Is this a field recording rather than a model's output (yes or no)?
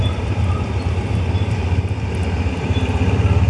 yes